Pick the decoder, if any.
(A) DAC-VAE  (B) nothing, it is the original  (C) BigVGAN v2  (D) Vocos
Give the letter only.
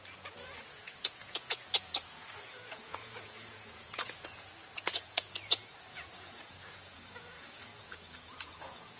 D